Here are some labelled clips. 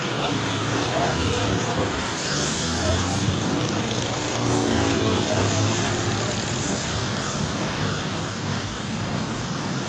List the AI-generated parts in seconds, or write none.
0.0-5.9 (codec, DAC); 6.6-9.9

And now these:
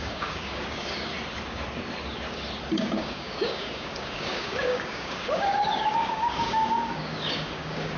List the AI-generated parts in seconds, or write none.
0.0-1.1 (codec, DAC); 2.8-8.0

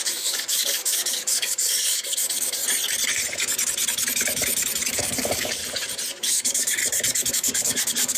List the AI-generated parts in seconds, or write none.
0.0-2.6 (codec, DAC); 4.9-5.6; 6.3-6.8; 7.3-8.2

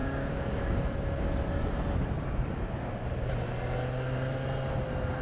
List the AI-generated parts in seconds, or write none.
0.0-0.8 (codec, DAC)

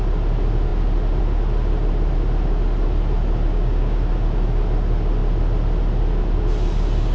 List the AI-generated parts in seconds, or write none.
3.5-4.0 (codec, DAC)